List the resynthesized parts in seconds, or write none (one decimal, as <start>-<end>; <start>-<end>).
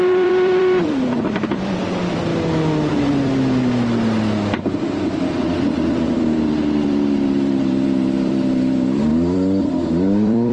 0.0-2.3; 2.9-3.3; 5.6-10.5